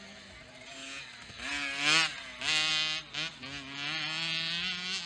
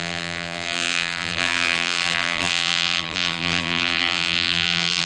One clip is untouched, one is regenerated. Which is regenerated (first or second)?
second